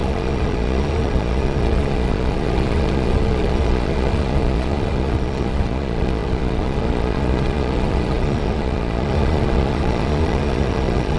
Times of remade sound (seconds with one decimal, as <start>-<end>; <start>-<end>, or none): 0.0-11.2